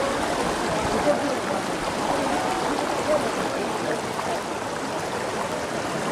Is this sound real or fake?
fake